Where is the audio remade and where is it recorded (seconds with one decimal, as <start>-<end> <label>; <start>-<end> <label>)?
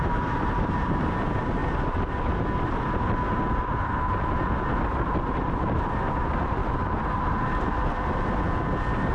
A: 0.0-1.6 remade; 1.6-5.6 recorded; 5.6-6.6 remade; 6.6-9.1 recorded